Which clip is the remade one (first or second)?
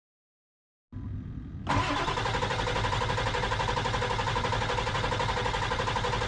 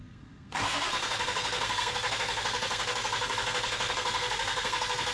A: second